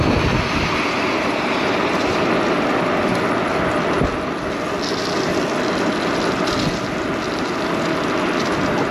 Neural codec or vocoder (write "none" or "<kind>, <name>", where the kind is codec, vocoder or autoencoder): none